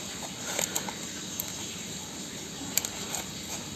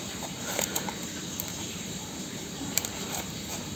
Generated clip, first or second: second